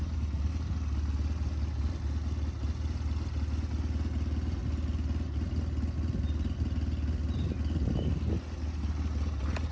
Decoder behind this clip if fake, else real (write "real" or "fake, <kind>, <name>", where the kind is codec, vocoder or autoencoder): real